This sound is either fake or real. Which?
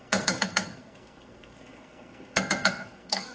fake